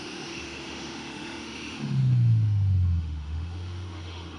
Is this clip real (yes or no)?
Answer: no